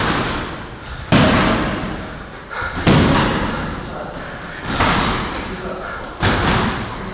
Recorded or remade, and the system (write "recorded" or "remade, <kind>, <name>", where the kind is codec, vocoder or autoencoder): recorded